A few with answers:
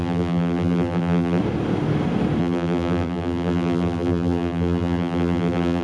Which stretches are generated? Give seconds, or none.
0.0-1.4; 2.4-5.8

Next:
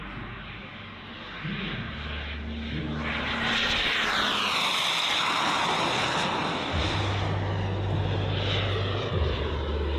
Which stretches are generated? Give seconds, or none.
6.4-7.0

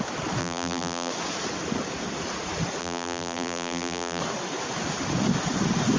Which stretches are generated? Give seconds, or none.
0.4-1.1; 2.8-4.2

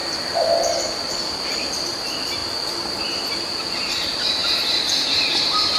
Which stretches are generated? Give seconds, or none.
0.0-2.4; 3.0-5.8

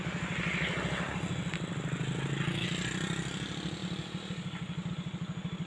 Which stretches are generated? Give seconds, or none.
none

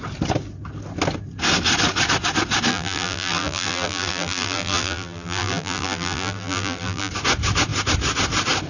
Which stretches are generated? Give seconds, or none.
2.7-7.1